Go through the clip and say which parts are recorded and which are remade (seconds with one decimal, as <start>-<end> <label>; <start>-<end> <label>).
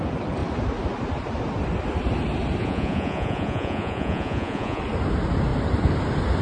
0.0-2.6 recorded; 2.6-4.8 remade; 4.8-6.4 recorded